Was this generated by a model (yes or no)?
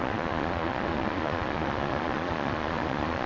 yes